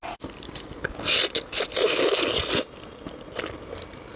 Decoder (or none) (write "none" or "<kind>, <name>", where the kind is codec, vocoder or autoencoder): none